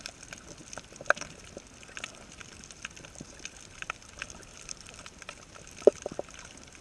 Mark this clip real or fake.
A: real